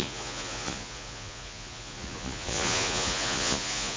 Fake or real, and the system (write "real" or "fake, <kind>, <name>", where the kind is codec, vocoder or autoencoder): fake, vocoder, Vocos